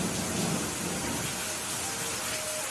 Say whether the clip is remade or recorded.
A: recorded